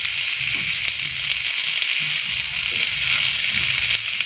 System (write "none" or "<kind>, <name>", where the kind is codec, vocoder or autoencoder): none